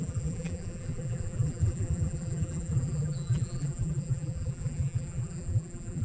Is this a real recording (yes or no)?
no